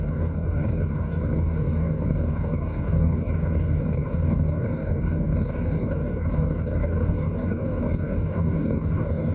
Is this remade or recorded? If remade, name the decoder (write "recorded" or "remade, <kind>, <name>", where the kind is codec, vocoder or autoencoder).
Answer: remade, codec, DAC